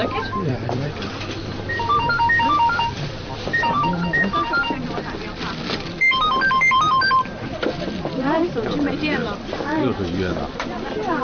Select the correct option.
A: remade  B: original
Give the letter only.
A